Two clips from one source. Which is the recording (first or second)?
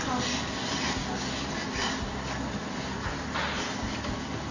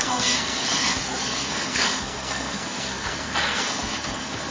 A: first